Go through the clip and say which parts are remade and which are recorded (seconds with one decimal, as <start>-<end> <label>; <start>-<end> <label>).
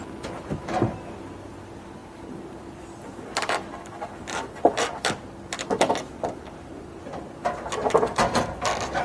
0.0-2.0 recorded; 2.0-7.2 remade; 7.2-9.0 recorded